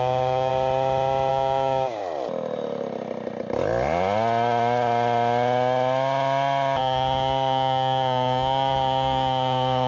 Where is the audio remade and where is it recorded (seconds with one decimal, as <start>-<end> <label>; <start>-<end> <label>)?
0.0-0.5 remade; 0.5-1.3 recorded; 1.3-2.0 remade; 2.0-6.8 recorded; 6.8-9.9 remade